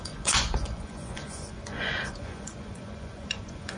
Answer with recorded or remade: remade